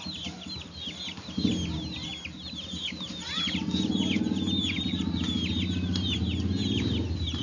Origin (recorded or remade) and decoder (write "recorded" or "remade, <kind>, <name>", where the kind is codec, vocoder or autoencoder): recorded